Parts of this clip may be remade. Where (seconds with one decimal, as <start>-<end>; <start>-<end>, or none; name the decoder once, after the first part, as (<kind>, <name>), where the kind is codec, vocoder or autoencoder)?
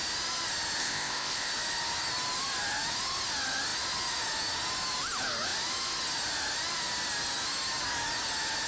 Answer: 0.8-1.5 (codec, ZipCodec)